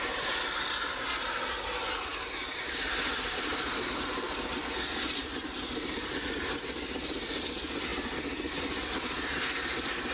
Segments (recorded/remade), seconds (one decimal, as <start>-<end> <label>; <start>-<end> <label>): 0.0-10.1 recorded